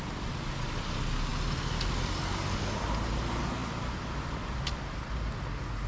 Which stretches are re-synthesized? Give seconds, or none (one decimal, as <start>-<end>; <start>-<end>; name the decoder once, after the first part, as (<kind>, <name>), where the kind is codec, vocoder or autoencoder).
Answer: none